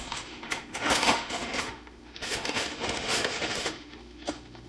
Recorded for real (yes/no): no